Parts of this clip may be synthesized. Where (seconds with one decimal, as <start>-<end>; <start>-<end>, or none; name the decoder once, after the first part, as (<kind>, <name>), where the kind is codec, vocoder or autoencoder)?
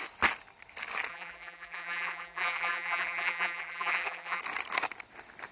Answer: 1.1-4.4 (vocoder, BigVGAN v2)